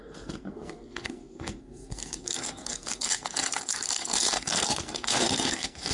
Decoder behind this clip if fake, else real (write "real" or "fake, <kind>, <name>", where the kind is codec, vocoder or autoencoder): fake, codec, SNAC